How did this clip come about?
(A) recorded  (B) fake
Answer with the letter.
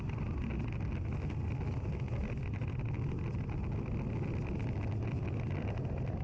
A